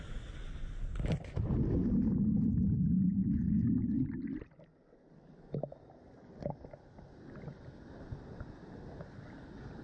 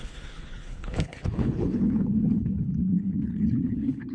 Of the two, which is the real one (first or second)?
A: first